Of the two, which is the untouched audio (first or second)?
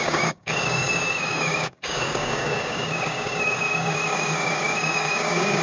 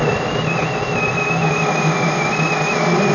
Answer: second